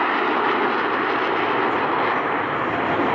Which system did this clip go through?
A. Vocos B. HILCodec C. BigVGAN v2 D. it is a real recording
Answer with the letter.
D